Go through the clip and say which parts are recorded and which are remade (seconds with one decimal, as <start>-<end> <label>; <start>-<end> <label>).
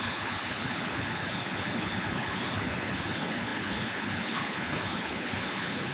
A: 0.0-5.9 remade